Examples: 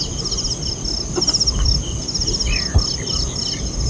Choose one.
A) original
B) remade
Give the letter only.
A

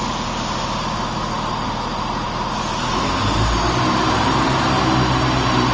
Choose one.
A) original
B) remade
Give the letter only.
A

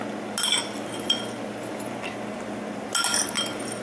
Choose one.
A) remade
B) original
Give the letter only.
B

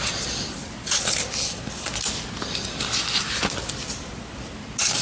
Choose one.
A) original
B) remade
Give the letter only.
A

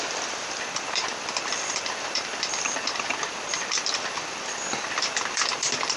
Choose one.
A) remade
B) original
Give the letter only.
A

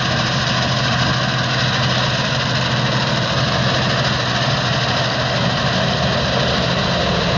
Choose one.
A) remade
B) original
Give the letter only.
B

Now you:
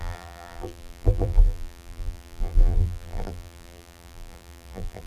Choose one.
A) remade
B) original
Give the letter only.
A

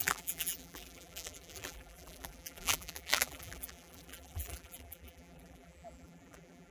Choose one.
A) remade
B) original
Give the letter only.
A